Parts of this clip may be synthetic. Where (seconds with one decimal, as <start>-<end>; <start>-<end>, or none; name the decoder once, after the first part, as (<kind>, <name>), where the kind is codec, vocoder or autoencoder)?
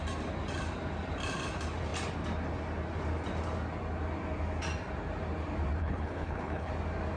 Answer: 5.8-6.7 (codec, HILCodec)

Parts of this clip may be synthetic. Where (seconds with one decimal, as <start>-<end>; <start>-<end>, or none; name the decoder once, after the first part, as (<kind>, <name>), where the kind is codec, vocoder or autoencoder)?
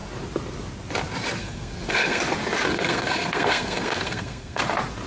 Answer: 1.4-2.2 (codec, SNAC); 2.7-4.6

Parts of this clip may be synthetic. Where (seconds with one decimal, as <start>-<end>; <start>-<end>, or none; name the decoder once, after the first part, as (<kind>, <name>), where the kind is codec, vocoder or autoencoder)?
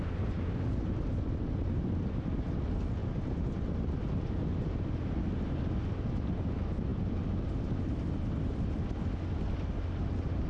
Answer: none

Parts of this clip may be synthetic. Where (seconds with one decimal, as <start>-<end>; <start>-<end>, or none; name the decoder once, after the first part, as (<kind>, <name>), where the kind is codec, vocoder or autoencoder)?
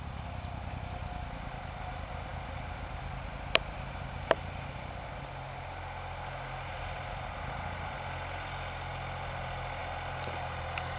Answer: 9.8-11.0 (vocoder, BigVGAN v2)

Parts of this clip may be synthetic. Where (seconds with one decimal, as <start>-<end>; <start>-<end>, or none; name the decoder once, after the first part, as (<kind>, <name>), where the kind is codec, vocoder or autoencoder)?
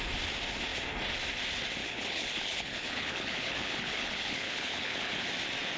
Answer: 1.8-5.3 (codec, HILCodec)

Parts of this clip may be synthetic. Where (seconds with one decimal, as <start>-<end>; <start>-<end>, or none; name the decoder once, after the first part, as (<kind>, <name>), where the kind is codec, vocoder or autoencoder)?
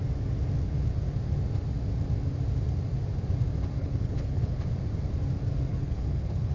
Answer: 3.8-4.6 (codec, HILCodec); 5.7-6.5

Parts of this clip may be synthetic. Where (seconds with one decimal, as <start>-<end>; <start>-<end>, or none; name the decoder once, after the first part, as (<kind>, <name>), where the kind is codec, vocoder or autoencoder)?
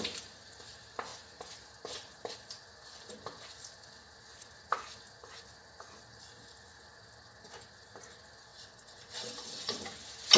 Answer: 8.5-9.8 (vocoder, WaveNeXt)